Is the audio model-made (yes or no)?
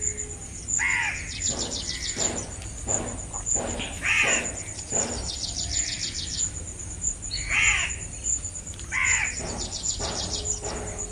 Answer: no